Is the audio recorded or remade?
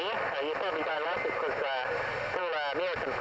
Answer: recorded